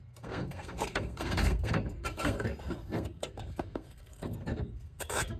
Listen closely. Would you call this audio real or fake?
fake